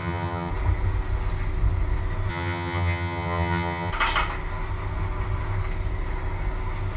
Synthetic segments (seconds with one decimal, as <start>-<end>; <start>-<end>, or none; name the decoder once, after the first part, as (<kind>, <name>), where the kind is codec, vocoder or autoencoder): 0.0-0.5 (vocoder, HiFi-GAN); 2.3-3.9